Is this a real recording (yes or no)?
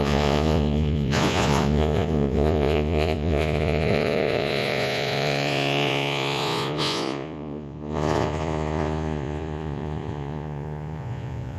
no